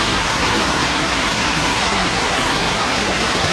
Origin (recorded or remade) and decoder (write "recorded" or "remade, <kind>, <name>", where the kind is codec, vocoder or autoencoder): remade, codec, SNAC